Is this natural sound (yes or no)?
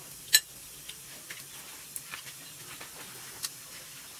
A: yes